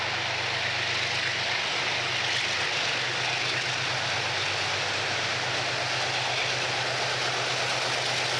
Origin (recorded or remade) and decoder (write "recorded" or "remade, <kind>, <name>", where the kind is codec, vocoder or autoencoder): recorded